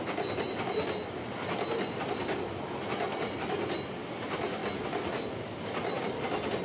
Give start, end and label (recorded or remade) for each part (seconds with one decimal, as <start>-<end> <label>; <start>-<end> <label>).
0.0-6.6 recorded